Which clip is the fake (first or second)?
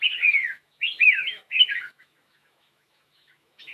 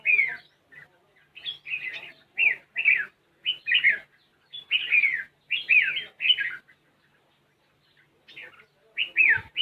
first